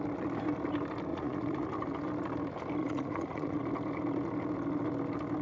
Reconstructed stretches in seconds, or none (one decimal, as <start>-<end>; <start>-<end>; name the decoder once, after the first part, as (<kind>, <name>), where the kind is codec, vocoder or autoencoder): 1.1-1.7 (vocoder, Vocos); 2.8-3.6